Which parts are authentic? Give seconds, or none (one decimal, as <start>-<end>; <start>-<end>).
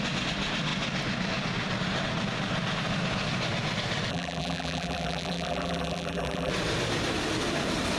0.0-4.1; 6.5-8.0